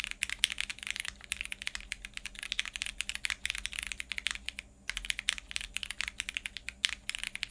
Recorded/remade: recorded